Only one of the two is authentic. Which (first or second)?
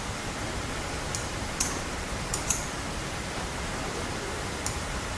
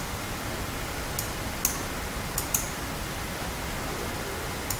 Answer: second